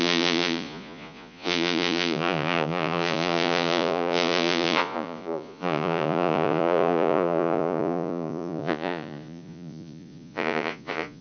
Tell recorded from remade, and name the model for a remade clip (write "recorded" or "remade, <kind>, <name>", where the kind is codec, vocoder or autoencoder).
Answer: remade, vocoder, Vocos